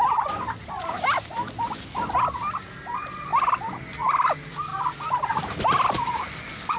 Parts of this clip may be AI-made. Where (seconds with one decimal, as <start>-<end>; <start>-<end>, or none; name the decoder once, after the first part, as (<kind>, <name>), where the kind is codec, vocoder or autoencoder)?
none